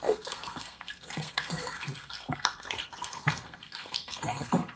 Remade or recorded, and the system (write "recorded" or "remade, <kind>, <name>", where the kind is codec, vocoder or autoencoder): remade, codec, SNAC